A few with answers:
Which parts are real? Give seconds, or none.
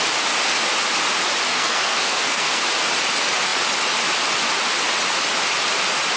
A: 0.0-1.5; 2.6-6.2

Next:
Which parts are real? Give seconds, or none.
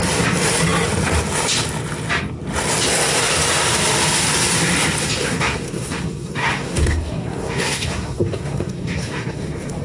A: 0.0-5.2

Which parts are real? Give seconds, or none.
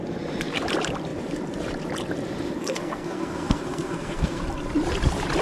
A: 0.0-2.6; 4.4-5.4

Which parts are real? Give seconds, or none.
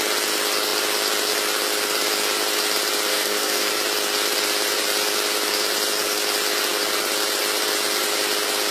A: 0.0-3.1; 3.7-8.7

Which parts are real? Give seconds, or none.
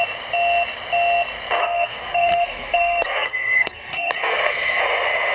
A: 0.0-1.6; 4.8-5.3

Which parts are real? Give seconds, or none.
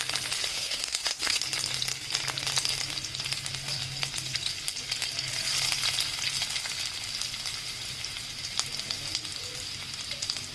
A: 0.0-0.5; 1.4-10.5